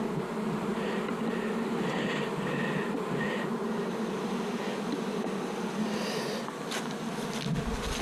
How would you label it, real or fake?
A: real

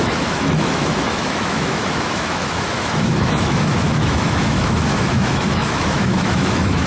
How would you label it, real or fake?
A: fake